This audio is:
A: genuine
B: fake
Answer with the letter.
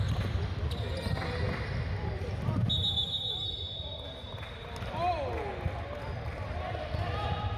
A